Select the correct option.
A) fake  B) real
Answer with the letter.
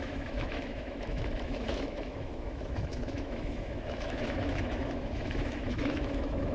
A